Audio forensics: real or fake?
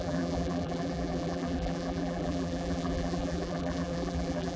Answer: fake